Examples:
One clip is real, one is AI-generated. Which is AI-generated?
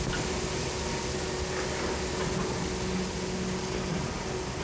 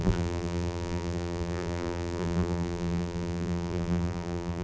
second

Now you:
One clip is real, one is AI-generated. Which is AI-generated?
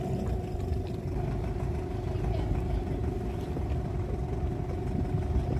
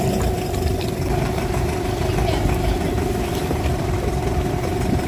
second